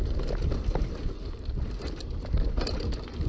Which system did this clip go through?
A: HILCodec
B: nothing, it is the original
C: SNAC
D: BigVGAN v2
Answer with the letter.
B